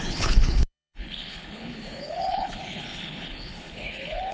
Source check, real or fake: fake